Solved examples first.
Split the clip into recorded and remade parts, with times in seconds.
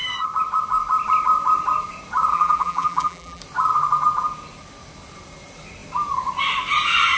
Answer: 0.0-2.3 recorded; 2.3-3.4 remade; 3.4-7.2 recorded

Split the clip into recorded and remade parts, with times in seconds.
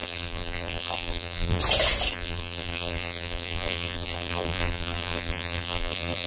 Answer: 0.0-1.6 remade; 1.6-2.1 recorded; 2.1-6.3 remade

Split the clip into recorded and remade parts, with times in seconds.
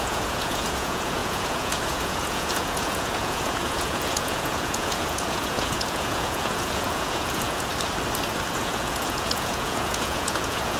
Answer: 0.0-7.7 remade; 7.7-8.6 recorded; 8.6-10.8 remade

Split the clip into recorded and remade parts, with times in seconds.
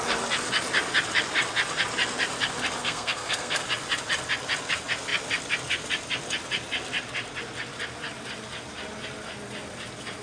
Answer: 0.0-2.8 recorded; 2.8-3.6 remade; 3.6-10.2 recorded